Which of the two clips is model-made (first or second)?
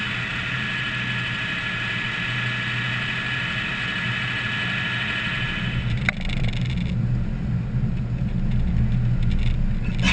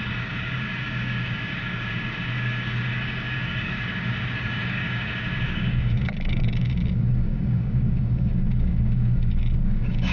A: second